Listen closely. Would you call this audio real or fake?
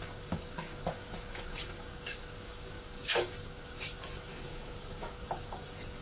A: fake